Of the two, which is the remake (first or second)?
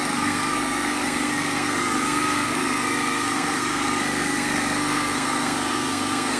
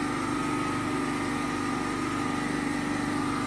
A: first